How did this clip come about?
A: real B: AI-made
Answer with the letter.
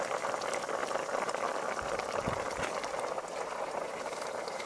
A